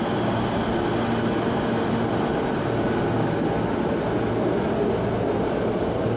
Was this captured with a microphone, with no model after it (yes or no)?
yes